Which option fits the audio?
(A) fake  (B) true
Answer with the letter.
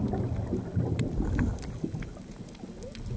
B